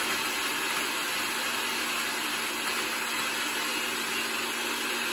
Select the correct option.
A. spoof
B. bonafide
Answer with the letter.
B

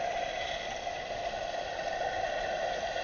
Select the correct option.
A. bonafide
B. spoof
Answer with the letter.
A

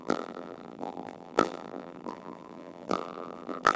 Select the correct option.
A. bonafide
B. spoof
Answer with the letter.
B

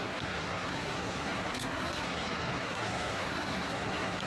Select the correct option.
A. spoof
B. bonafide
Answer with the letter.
A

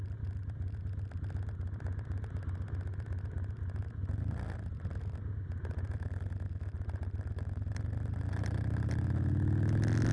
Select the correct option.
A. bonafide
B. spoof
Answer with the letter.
A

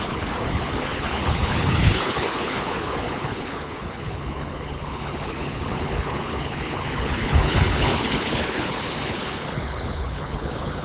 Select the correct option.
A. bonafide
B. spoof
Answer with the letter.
B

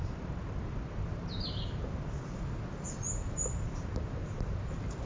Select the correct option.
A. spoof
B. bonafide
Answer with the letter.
B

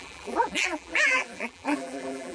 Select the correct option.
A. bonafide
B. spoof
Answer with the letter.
B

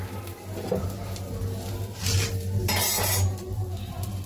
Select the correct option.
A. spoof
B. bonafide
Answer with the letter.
B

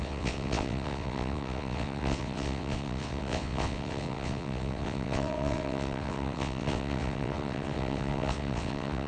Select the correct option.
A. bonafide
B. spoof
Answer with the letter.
B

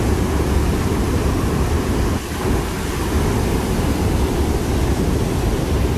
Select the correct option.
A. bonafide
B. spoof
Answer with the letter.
A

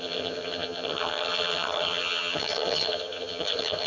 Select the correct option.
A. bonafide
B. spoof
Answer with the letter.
B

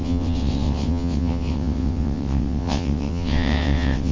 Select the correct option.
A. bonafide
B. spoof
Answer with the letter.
B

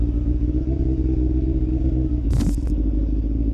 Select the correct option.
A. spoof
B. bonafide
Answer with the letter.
A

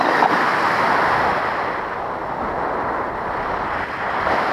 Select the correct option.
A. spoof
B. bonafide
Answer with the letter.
B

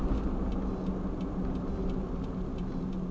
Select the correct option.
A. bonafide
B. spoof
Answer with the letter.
A